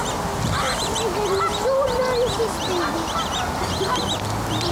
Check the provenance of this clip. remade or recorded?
recorded